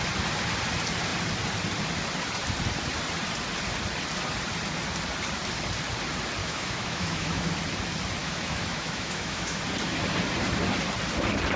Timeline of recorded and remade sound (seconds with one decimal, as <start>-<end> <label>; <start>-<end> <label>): 0.0-6.4 recorded; 6.4-7.5 remade; 7.5-8.2 recorded; 8.2-9.6 remade; 9.6-11.6 recorded